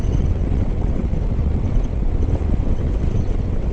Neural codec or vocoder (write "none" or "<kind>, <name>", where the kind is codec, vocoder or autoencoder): vocoder, WaveNeXt